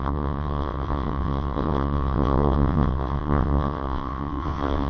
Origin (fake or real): fake